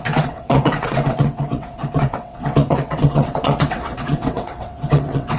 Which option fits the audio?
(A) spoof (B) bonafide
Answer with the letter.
A